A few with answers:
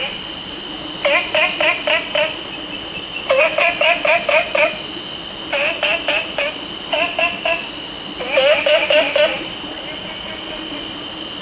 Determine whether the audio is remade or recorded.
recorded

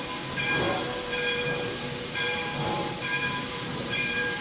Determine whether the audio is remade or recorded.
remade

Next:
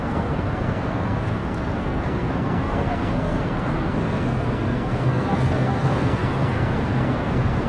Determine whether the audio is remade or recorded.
remade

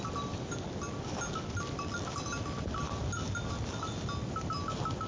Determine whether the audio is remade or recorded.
recorded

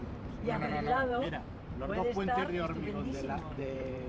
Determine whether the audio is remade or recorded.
remade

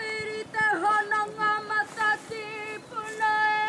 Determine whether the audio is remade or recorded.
recorded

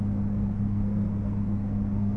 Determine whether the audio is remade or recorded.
remade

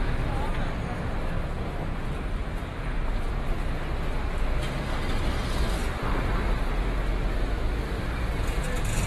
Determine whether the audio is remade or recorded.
recorded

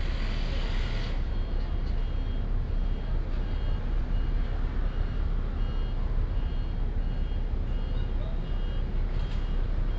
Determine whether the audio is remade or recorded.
recorded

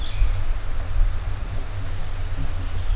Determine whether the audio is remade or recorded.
recorded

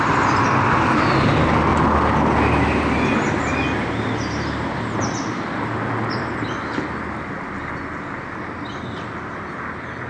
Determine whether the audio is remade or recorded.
recorded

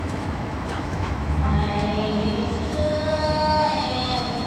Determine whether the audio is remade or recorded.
remade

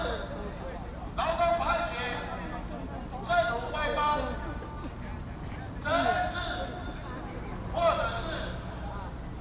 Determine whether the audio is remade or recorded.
recorded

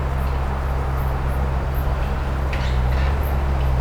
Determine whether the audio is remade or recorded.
recorded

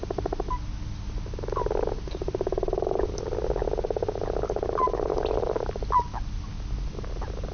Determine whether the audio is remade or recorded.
recorded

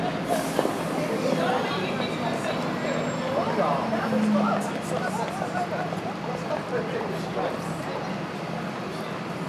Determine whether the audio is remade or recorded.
recorded